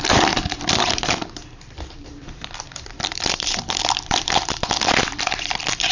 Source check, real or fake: fake